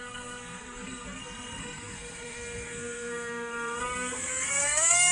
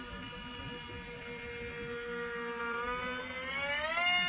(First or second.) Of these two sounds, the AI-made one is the first